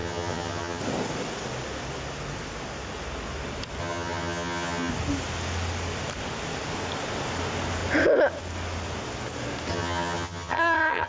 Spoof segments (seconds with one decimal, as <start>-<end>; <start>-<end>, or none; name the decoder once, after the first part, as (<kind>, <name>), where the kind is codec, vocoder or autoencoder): 0.0-0.8 (vocoder, HiFi-GAN); 3.8-4.9; 9.7-11.1